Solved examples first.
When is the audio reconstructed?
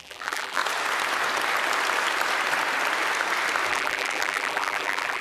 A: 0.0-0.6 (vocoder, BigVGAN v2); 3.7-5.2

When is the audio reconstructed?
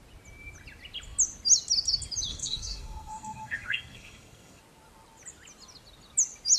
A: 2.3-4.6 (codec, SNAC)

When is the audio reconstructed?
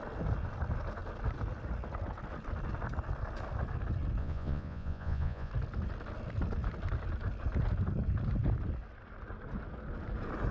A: 4.2-5.5 (vocoder, Vocos)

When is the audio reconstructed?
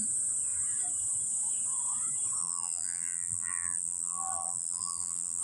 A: 2.4-5.4 (vocoder, BigVGAN v2)